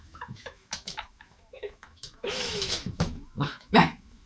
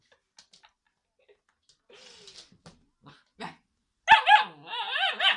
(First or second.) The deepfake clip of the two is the first